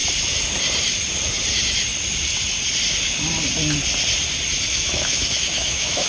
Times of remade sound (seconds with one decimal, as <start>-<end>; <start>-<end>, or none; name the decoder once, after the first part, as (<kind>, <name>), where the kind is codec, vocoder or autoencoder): 4.7-6.1 (autoencoder, DAC-VAE)